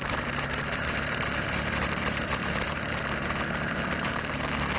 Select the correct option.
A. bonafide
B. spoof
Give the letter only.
B